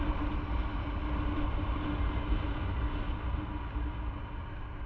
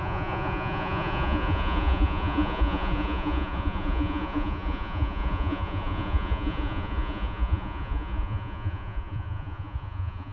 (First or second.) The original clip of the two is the first